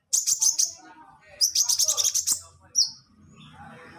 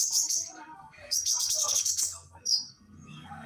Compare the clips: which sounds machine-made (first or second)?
second